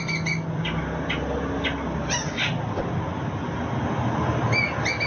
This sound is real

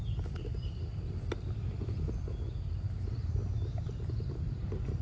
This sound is real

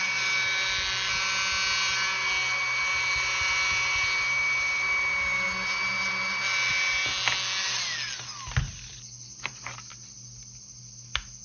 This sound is real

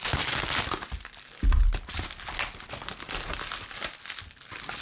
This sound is real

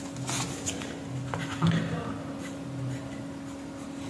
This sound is real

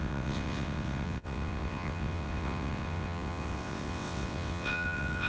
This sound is fake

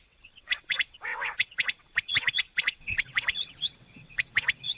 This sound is fake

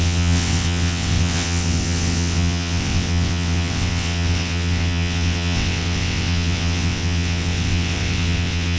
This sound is fake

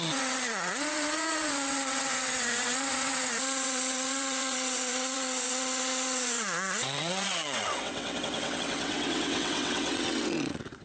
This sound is fake